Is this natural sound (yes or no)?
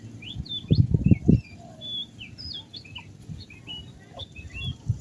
yes